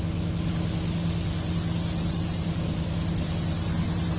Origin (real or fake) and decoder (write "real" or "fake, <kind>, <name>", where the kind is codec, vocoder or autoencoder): real